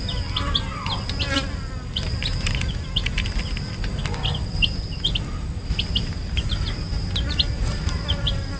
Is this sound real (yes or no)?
yes